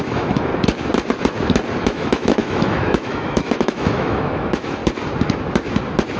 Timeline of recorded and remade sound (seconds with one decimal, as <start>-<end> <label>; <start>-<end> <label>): 0.0-0.5 remade; 0.5-1.8 recorded; 1.8-4.8 remade; 4.8-6.2 recorded